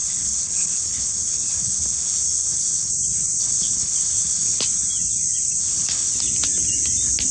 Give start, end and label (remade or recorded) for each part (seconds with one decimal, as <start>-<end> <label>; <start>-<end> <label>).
0.0-2.9 remade; 2.9-3.4 recorded; 3.4-4.6 remade; 4.6-5.6 recorded; 5.6-6.2 remade; 6.2-7.3 recorded